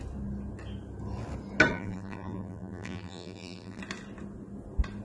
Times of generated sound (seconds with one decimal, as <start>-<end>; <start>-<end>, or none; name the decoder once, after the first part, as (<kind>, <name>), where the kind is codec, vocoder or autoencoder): 1.7-3.8 (vocoder, BigVGAN v2)